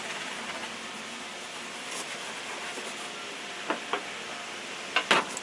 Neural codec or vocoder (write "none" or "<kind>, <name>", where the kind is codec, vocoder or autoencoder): none